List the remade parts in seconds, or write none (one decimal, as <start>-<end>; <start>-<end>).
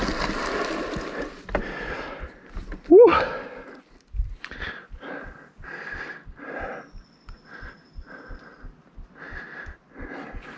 none